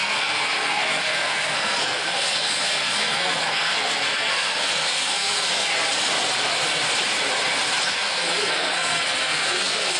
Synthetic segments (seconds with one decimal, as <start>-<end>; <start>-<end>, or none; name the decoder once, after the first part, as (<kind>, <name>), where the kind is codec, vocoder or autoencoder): 0.0-5.7 (codec, SNAC); 7.9-10.0